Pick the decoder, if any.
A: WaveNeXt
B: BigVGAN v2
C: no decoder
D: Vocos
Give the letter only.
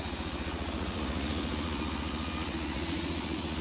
D